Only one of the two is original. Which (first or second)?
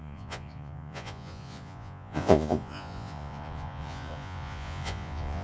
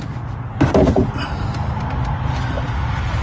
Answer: second